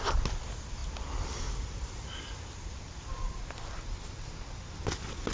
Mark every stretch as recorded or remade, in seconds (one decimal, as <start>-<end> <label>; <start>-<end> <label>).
0.0-5.3 recorded